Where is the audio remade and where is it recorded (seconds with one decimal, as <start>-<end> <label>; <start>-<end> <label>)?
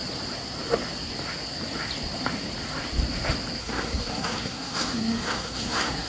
0.0-3.6 recorded; 3.6-6.1 remade